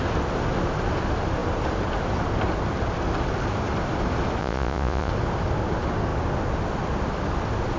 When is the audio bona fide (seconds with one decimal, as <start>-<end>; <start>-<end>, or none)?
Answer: 0.0-4.4; 5.1-7.8